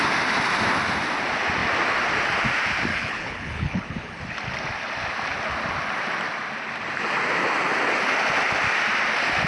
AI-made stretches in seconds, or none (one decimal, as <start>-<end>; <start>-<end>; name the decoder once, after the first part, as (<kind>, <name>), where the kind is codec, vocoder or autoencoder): 2.9-4.2 (codec, HILCodec)

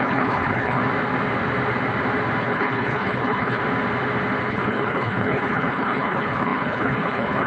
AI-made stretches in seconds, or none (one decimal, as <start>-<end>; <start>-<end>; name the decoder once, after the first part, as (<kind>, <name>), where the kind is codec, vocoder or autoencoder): 0.0-0.8 (codec, HILCodec); 2.4-3.6; 4.5-7.5